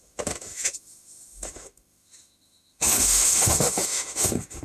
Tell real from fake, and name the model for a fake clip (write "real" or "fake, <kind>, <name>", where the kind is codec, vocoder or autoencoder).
fake, autoencoder, DAC-VAE